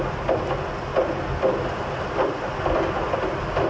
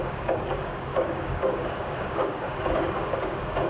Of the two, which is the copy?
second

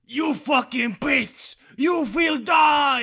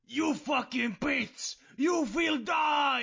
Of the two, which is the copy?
first